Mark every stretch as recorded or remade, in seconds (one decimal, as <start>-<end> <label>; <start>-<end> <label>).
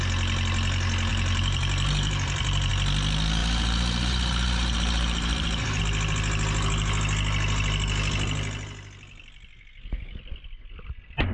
0.0-1.1 recorded; 1.1-2.7 remade; 2.7-3.4 recorded; 3.4-5.8 remade; 5.8-11.3 recorded